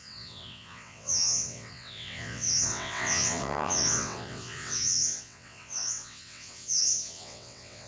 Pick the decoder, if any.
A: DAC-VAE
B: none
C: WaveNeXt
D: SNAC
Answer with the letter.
C